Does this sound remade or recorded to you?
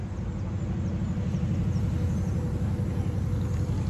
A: recorded